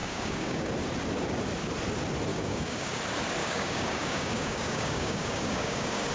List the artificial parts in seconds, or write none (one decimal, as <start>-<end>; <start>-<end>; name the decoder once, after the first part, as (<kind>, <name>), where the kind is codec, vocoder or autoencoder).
0.0-0.7 (codec, DAC); 2.3-3.0; 3.4-6.1